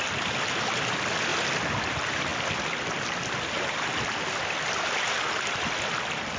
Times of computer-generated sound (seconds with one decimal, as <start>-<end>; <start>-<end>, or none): none